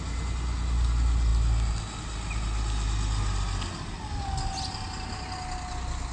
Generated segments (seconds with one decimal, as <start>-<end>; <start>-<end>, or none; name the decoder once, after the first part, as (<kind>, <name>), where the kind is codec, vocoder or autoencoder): none